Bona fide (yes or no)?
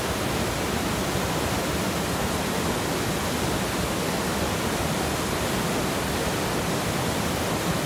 yes